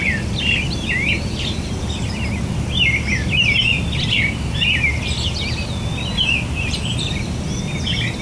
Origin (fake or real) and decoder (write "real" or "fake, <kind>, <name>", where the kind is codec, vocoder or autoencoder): real